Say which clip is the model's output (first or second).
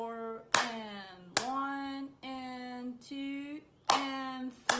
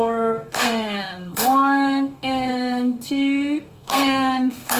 second